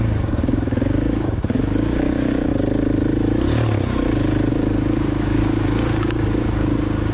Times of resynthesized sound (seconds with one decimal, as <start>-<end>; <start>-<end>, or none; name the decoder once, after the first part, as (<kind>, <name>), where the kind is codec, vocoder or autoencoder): 0.0-2.5 (codec, DAC); 4.5-7.1

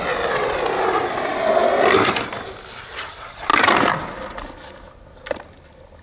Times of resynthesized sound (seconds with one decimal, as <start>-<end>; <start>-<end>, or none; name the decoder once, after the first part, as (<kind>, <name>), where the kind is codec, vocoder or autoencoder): none